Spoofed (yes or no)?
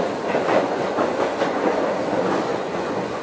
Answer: yes